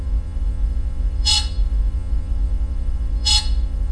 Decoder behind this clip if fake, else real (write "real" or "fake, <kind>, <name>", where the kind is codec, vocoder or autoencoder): fake, vocoder, Vocos